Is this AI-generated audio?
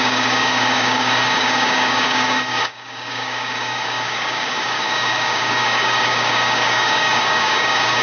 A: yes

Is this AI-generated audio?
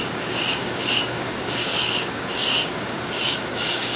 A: yes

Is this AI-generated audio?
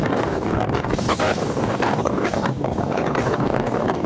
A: yes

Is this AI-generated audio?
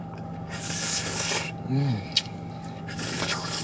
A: yes